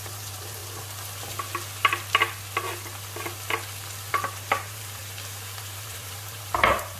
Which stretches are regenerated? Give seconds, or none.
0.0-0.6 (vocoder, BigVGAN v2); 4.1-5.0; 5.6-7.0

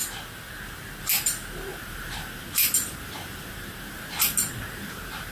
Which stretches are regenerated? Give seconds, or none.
1.7-5.3 (vocoder, BigVGAN v2)